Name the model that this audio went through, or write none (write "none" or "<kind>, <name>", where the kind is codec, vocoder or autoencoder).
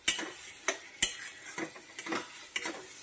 none